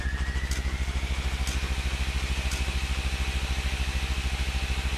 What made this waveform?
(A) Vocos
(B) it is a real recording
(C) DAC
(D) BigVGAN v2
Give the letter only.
B